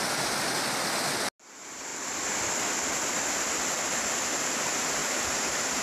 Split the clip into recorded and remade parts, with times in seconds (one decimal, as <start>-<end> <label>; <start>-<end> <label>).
0.0-5.0 recorded; 5.0-5.8 remade